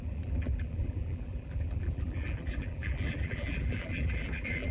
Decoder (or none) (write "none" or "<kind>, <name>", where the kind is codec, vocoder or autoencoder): vocoder, BigVGAN v2